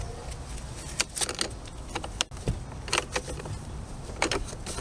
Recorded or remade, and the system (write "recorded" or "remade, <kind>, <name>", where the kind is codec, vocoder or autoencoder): recorded